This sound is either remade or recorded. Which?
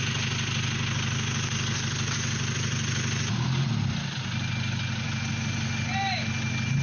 recorded